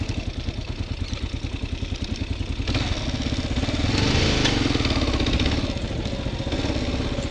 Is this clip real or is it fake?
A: real